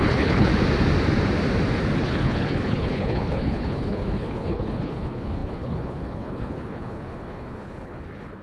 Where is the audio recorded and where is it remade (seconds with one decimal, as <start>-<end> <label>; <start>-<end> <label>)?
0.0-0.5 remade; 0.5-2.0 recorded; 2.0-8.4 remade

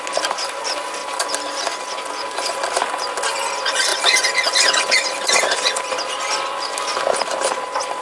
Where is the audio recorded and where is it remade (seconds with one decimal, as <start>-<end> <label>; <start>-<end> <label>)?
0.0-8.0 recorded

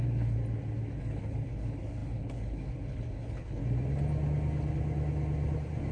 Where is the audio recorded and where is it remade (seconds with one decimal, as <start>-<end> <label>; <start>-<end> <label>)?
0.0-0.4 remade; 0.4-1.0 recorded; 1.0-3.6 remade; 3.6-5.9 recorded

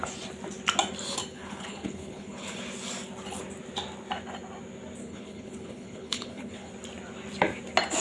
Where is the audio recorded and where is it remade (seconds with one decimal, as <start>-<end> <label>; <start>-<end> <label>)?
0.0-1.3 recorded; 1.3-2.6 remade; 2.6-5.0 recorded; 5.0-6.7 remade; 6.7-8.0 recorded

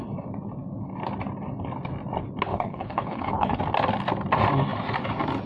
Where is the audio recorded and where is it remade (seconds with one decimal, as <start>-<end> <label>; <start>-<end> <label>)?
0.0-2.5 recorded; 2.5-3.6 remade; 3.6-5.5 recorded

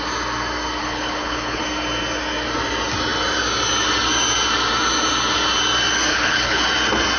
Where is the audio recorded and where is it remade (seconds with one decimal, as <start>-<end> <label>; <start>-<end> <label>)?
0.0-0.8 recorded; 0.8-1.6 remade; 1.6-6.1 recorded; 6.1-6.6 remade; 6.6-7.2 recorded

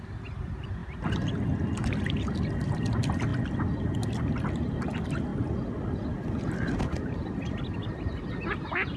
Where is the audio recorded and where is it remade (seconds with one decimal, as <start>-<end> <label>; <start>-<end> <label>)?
0.0-9.0 recorded

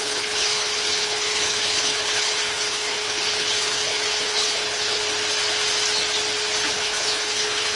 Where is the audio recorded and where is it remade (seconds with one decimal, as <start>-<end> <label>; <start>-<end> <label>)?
0.0-5.0 remade; 5.0-6.7 recorded; 6.7-7.8 remade